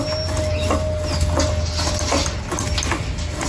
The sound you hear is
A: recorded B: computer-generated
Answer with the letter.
A